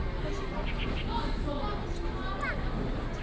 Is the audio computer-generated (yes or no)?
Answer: no